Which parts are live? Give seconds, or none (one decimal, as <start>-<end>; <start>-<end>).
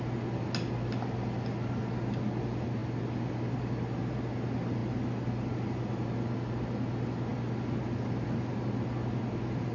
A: 0.0-9.7